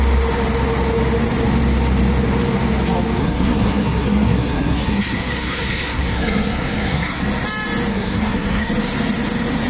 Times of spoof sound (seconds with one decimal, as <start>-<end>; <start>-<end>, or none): 3.2-7.2; 7.9-8.7